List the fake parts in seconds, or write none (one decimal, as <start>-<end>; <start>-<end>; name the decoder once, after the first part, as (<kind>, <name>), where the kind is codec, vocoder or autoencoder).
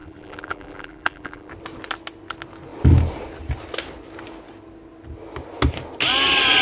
0.0-1.5 (vocoder, BigVGAN v2)